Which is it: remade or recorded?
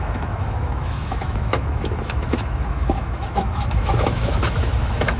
remade